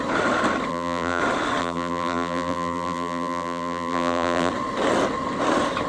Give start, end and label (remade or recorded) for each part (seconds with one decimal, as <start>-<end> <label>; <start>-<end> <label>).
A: 0.0-0.7 recorded; 0.7-1.2 remade; 1.2-1.6 recorded; 1.6-4.5 remade; 4.5-5.9 recorded

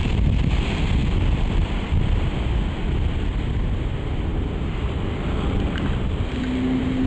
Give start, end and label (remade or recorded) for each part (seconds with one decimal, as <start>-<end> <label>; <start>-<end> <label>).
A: 0.0-1.0 recorded; 1.0-2.2 remade; 2.2-4.3 recorded; 4.3-7.1 remade

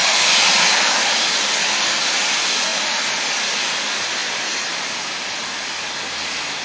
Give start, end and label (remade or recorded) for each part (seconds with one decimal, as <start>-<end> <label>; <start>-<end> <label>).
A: 0.0-4.2 recorded; 4.2-6.0 remade; 6.0-6.6 recorded

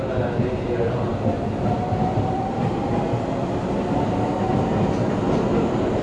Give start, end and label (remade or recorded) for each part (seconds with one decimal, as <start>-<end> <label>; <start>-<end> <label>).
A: 0.0-6.0 recorded

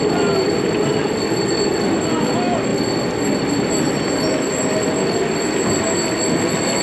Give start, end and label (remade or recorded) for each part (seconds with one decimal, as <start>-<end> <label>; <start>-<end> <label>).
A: 0.0-6.8 recorded